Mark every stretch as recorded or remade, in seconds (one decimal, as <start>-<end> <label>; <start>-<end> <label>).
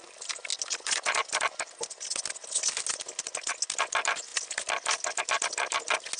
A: 0.0-6.2 recorded